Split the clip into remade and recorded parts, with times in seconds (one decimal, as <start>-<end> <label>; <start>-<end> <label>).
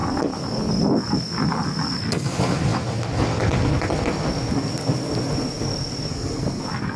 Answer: 0.0-6.1 recorded; 6.1-6.6 remade; 6.6-7.0 recorded